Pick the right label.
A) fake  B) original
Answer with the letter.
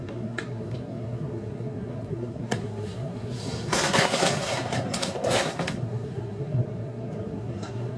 A